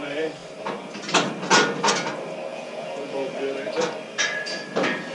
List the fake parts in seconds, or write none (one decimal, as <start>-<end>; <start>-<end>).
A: 2.5-3.3